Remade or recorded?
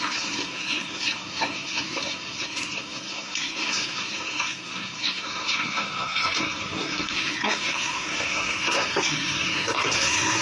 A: remade